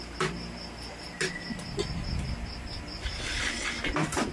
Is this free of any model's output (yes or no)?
yes